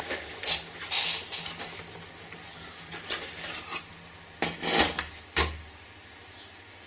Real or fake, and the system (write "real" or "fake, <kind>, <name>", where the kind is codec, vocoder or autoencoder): real